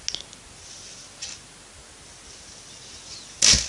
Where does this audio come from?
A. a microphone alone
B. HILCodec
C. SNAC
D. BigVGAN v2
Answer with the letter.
A